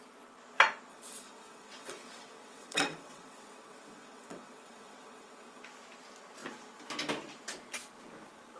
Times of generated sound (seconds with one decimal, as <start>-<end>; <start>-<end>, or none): 0.9-5.6

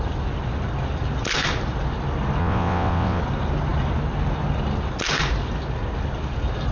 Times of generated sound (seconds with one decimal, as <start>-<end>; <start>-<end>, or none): 2.4-3.2

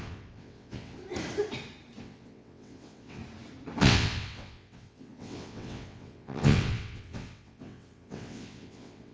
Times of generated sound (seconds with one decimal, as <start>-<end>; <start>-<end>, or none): 0.0-1.0; 2.0-3.2; 3.8-9.1

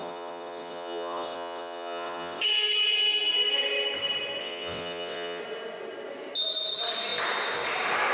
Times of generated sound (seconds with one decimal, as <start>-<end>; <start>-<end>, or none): 0.0-2.4; 4.4-5.4

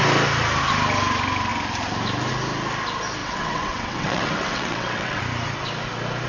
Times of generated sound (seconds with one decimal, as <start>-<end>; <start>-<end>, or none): 3.2-5.2

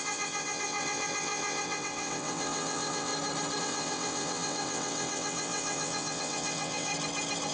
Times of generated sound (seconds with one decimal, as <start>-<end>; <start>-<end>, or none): 0.0-3.1; 3.6-6.9

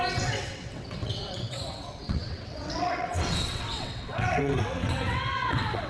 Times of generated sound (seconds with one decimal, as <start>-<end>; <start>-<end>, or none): 0.0-5.9